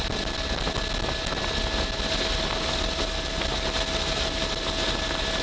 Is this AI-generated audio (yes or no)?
no